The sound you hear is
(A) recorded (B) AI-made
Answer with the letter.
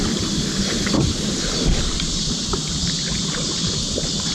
A